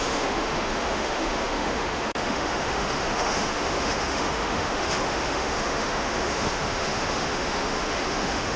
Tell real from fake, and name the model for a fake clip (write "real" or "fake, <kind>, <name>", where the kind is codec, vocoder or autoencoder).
fake, autoencoder, DAC-VAE